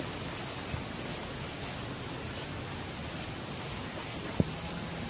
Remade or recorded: recorded